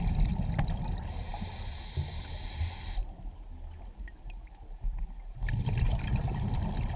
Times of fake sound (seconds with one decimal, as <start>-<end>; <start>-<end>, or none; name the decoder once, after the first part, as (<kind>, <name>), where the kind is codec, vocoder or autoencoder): none